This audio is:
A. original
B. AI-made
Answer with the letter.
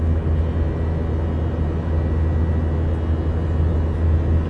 A